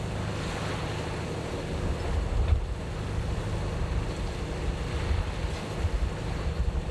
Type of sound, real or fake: real